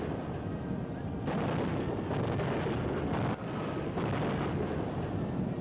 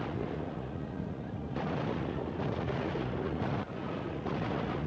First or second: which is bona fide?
first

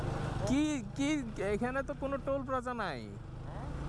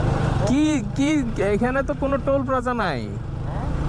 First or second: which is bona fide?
first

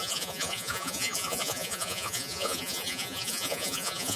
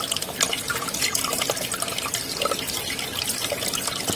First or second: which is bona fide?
second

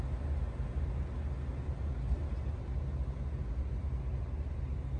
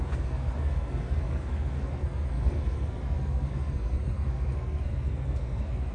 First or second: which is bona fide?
first